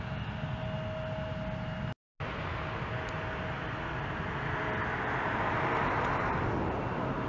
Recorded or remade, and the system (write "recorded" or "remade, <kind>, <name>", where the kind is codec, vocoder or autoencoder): recorded